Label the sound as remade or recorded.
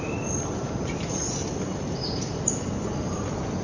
recorded